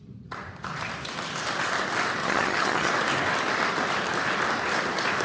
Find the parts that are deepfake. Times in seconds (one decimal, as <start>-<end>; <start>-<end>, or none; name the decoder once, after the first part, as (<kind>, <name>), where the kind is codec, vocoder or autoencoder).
2.2-2.9 (vocoder, HiFi-GAN)